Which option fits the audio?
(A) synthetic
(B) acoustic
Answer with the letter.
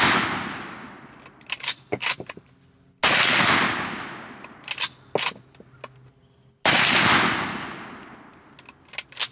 B